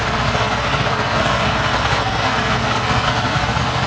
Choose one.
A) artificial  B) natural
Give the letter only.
A